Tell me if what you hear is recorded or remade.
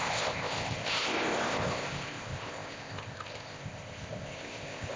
remade